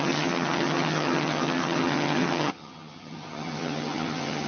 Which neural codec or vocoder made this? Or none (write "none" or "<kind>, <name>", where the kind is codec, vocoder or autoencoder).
vocoder, HiFi-GAN